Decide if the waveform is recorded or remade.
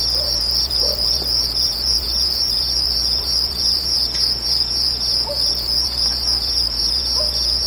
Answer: remade